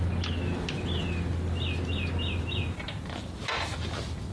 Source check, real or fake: real